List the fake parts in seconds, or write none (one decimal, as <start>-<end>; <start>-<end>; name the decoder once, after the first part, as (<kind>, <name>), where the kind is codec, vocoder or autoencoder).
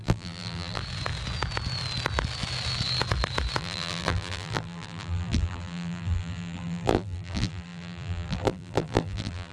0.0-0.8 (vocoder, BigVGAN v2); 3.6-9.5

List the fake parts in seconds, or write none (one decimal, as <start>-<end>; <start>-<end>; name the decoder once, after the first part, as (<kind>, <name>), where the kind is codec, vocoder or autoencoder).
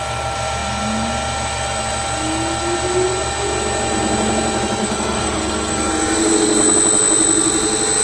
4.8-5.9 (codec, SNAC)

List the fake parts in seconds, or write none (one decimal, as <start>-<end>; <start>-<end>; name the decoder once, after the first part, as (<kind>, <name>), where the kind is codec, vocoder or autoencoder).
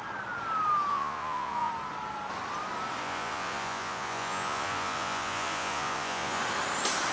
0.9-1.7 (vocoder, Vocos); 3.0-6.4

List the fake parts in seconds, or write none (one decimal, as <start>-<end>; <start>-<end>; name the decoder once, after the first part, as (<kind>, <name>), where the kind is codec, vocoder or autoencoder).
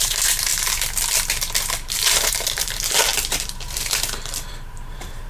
0.0-0.5 (vocoder, BigVGAN v2); 1.9-3.1; 4.5-5.3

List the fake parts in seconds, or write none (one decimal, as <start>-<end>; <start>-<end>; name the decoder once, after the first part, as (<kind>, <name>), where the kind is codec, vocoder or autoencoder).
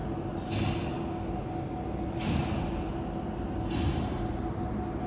none